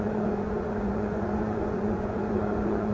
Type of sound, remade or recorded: remade